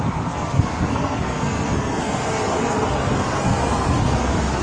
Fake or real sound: fake